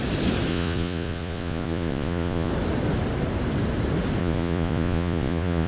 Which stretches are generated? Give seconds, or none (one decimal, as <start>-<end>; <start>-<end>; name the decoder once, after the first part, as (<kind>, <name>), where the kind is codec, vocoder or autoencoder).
0.5-2.5 (vocoder, Vocos); 4.2-5.7